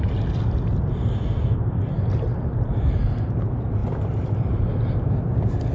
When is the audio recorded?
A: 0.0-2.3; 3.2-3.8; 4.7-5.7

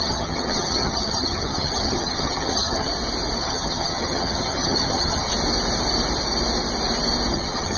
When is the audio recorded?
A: 2.9-3.4; 5.3-7.3

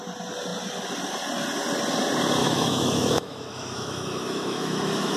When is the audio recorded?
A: 0.0-2.4

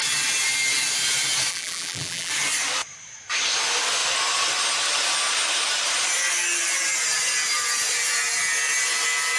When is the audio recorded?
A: 0.0-1.5; 2.3-9.4

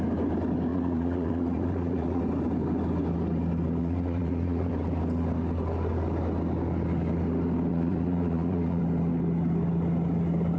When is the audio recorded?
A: 0.0-0.7; 2.2-3.8; 4.7-7.7; 8.8-10.6

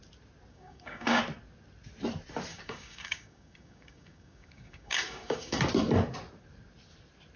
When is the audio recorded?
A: 0.0-0.5; 1.2-2.5; 5.6-7.4